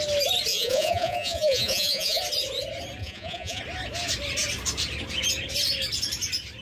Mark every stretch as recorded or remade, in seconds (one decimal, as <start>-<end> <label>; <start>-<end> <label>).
0.0-0.5 recorded; 0.5-2.2 remade; 2.2-3.0 recorded; 3.0-3.6 remade; 3.6-6.6 recorded